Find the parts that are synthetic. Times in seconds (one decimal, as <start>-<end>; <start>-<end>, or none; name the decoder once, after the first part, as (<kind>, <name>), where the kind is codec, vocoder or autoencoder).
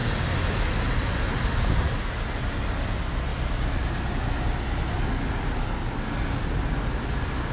none